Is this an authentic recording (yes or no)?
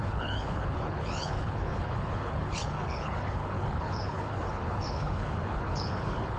no